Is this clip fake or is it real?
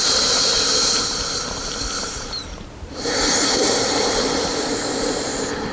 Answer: fake